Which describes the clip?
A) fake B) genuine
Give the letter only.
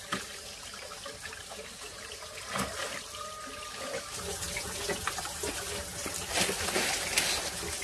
B